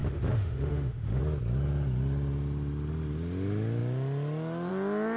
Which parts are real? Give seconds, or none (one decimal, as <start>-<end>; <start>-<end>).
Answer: 1.2-5.2